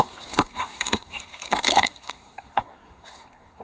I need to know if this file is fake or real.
fake